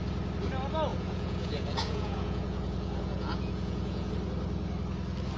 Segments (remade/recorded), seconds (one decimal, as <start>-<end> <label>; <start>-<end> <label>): 0.0-0.9 recorded; 0.9-4.1 remade; 4.1-5.4 recorded